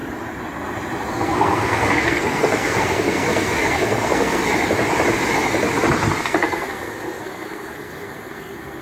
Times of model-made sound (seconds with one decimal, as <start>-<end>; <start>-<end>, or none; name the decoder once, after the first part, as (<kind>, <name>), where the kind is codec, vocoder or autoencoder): 1.1-4.4 (codec, SNAC); 6.2-8.8

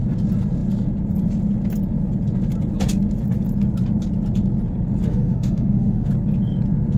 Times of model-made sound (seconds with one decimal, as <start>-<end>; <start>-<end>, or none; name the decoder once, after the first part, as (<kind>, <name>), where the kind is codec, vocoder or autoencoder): 5.1-6.1 (autoencoder, DAC-VAE)

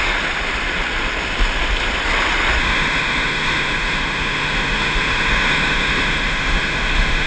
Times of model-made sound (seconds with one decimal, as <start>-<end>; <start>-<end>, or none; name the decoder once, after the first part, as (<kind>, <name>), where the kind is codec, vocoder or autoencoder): 2.6-7.3 (autoencoder, DAC-VAE)

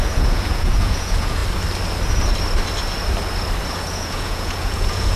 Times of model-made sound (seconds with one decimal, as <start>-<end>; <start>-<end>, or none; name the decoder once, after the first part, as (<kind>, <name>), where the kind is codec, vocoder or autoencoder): 0.0-1.4 (vocoder, Vocos); 3.8-5.2

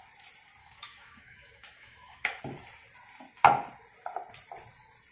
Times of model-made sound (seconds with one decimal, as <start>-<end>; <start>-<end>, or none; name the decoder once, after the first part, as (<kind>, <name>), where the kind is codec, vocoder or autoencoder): 0.6-2.4 (autoencoder, DAC-VAE)

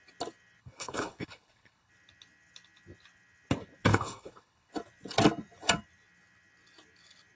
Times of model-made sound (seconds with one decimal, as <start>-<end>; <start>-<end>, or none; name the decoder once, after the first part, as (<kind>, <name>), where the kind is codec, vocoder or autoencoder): 0.6-1.9 (codec, HILCodec); 3.9-4.7

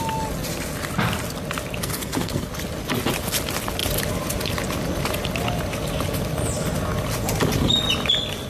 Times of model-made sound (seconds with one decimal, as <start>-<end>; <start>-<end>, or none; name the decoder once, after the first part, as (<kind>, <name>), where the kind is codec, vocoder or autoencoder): 1.8-2.5 (codec, SNAC)

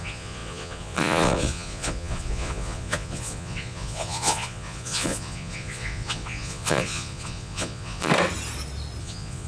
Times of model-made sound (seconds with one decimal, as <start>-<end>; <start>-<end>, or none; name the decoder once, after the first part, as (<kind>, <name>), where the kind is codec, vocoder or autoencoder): 0.0-8.1 (vocoder, Vocos); 9.0-9.5